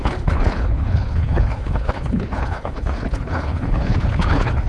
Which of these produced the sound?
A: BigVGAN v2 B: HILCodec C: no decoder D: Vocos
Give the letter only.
B